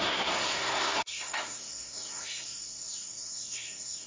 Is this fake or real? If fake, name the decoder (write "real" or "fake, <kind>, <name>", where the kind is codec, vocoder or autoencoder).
fake, codec, SNAC